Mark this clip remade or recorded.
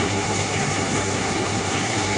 remade